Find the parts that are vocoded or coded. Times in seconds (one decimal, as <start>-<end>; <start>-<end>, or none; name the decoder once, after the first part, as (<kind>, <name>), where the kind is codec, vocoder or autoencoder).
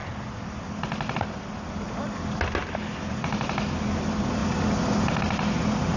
none